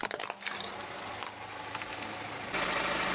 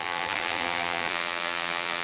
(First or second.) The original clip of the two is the first